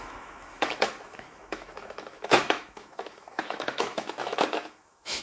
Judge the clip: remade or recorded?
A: remade